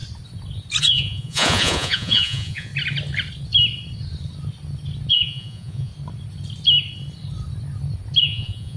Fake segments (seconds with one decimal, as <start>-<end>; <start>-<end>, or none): 0.8-2.7; 5.1-5.9; 8.2-8.8